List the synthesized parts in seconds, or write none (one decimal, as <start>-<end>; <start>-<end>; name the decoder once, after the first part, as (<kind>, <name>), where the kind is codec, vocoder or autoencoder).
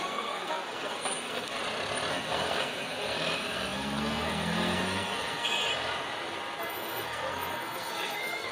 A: 0.0-1.6 (codec, SNAC); 2.1-5.7; 6.6-8.5